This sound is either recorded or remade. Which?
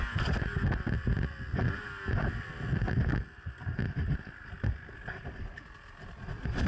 recorded